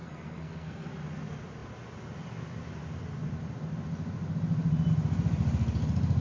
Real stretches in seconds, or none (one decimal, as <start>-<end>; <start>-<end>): 0.9-6.2